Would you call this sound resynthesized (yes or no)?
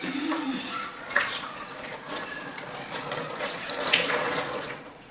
yes